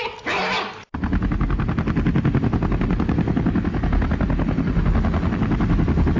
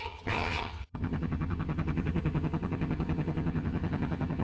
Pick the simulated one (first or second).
second